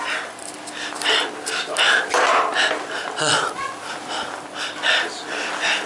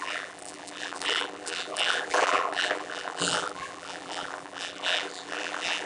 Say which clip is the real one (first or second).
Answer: first